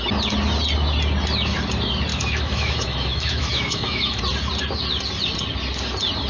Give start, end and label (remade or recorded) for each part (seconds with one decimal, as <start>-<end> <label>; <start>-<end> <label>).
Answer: 0.0-2.1 recorded; 2.1-4.2 remade; 4.2-6.3 recorded